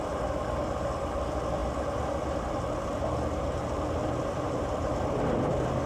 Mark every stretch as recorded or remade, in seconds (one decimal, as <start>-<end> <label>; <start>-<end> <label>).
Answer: 0.0-5.9 recorded